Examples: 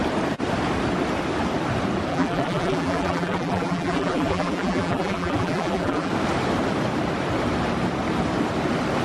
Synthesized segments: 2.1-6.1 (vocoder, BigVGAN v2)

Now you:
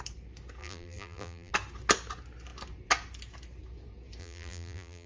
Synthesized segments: 0.6-1.5 (vocoder, BigVGAN v2); 4.2-5.1

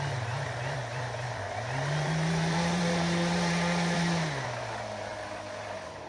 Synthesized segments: 0.0-5.1 (vocoder, BigVGAN v2); 5.6-6.1

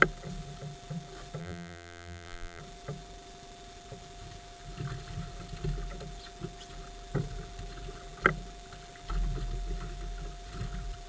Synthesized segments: 1.4-2.6 (vocoder, BigVGAN v2)

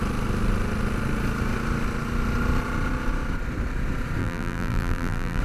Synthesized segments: 4.2-5.4 (vocoder, BigVGAN v2)

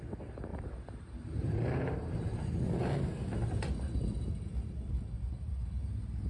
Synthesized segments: 0.5-2.6 (vocoder, BigVGAN v2)

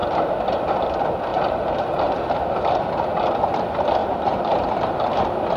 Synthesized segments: 1.3-2.9 (vocoder, BigVGAN v2); 4.0-4.8

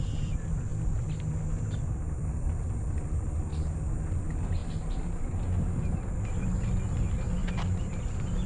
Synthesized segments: 0.0-3.5 (vocoder, BigVGAN v2); 4.1-4.6; 6.1-8.5